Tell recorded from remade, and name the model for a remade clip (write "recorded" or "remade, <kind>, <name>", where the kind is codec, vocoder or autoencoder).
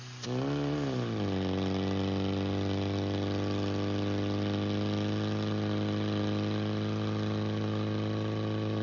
recorded